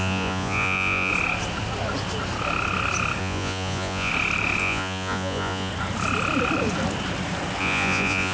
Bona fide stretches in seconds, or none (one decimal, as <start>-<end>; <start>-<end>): 1.1-3.2; 4.1-4.6; 5.7-7.6